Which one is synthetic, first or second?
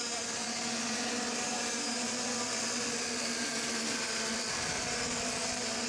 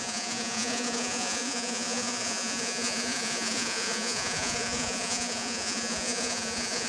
second